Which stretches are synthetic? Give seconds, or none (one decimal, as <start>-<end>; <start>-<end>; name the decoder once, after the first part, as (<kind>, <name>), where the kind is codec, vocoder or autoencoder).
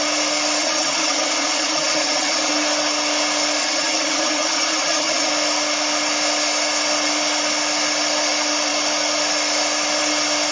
0.6-2.5 (vocoder, HiFi-GAN); 3.6-5.3